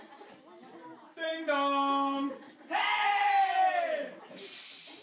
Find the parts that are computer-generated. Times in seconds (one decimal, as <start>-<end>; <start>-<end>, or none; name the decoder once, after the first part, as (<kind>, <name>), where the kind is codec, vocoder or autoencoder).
none